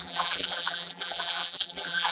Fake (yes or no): yes